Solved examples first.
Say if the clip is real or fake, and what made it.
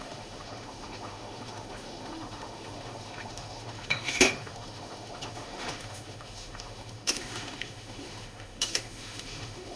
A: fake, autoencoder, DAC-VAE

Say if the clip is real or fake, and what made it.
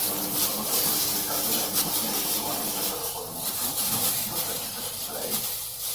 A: fake, vocoder, BigVGAN v2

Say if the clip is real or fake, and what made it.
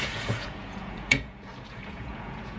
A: fake, vocoder, Vocos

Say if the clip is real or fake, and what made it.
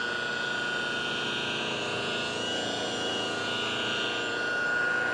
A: real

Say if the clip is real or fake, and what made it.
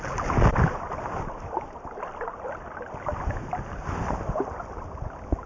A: real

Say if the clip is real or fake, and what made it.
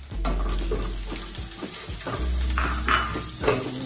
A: real